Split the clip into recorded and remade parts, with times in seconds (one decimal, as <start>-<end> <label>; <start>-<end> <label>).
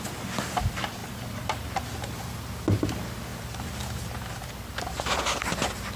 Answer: 0.0-1.0 recorded; 1.0-2.2 remade; 2.2-3.3 recorded; 3.3-4.4 remade; 4.4-6.0 recorded